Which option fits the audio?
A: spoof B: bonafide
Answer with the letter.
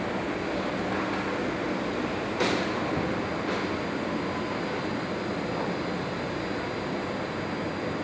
B